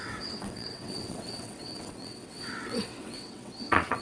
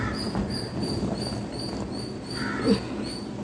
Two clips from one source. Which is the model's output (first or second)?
first